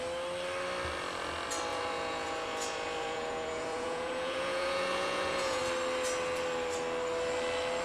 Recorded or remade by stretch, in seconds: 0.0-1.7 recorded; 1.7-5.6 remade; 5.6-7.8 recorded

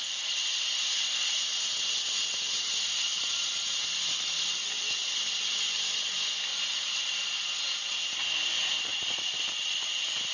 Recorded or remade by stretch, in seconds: 0.0-10.3 recorded

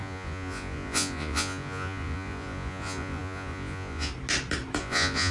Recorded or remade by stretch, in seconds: 0.0-4.1 remade; 4.1-4.8 recorded; 4.8-5.3 remade